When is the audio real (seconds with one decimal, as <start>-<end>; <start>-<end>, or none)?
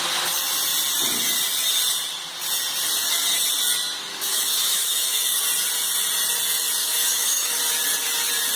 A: 0.0-4.1; 5.4-6.8; 7.6-8.6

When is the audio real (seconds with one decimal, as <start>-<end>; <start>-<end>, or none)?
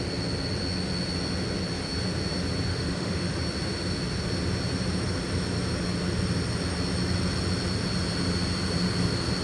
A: 0.0-2.7; 3.4-9.4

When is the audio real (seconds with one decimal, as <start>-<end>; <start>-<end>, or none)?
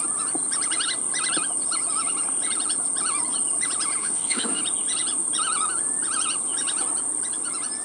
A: 0.0-4.0; 4.6-7.8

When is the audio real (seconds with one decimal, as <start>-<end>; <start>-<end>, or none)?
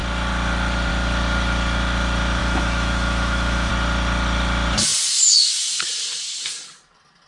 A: 0.0-2.4; 3.7-7.3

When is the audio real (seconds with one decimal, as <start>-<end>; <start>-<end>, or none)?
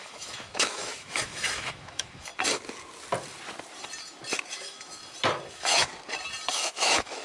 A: 2.3-4.5; 5.0-5.5; 5.9-6.5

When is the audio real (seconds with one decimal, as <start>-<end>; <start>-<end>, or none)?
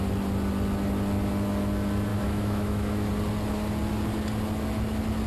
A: 0.0-2.1; 3.1-5.3